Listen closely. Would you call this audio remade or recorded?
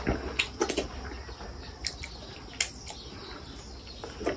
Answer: recorded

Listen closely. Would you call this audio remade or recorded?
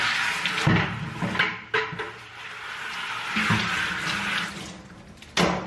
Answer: recorded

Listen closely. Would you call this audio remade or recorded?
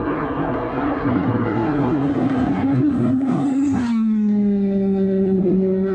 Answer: remade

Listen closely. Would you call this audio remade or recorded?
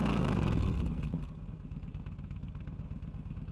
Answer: remade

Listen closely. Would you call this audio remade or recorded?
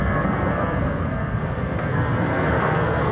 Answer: remade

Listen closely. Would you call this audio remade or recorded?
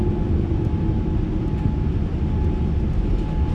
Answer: recorded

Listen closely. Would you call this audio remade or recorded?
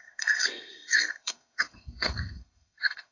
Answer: remade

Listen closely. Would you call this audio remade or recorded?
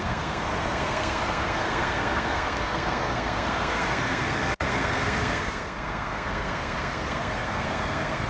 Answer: remade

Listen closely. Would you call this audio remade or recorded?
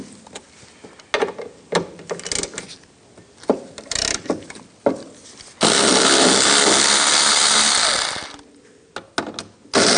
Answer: recorded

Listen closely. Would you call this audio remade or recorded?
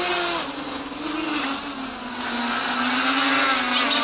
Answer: recorded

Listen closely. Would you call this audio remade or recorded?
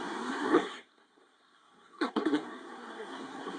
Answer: remade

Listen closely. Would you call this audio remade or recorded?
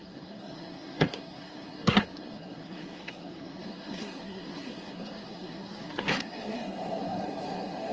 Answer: remade